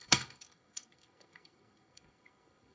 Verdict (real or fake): fake